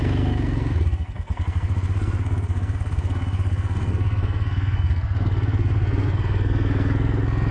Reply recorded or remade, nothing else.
remade